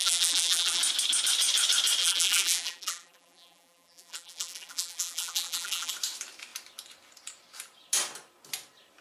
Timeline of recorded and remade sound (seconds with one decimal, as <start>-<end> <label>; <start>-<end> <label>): 0.0-0.8 remade; 0.8-2.0 recorded; 2.0-5.9 remade; 5.9-9.0 recorded